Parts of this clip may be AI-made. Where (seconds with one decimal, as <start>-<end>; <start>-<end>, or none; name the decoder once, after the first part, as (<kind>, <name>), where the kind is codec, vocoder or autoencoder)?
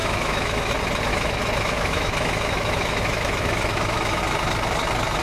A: 0.0-0.7 (autoencoder, DAC-VAE); 1.1-4.2